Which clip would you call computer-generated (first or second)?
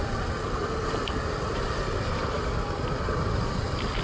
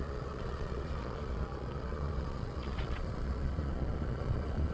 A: second